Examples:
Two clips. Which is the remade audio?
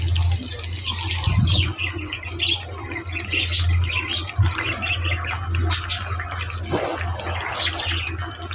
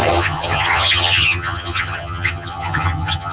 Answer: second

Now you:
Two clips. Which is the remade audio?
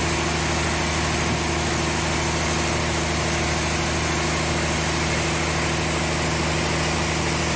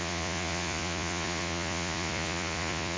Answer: second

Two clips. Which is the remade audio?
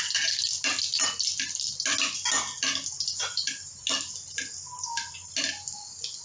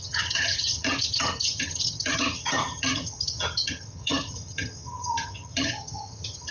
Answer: second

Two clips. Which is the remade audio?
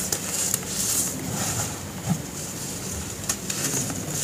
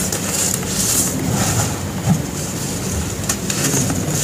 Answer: first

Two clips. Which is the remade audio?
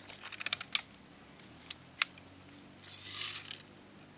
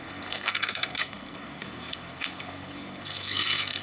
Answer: second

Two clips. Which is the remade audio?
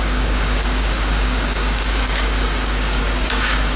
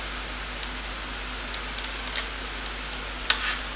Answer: first